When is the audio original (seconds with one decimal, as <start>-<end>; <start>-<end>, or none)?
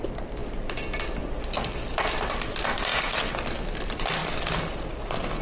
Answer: 0.0-5.4